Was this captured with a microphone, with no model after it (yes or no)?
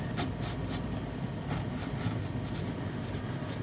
yes